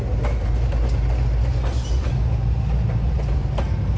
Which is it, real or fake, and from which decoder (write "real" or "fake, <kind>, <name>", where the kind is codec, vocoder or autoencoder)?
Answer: real